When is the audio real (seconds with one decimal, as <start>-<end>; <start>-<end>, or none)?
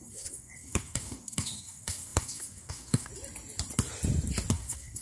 3.1-4.5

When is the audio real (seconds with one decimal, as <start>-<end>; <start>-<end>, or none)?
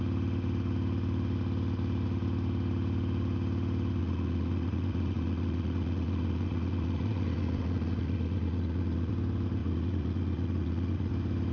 0.0-4.0; 9.1-9.6; 11.1-11.5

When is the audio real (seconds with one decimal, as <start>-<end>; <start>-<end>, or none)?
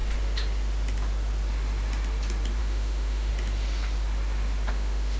0.0-2.6; 3.3-4.7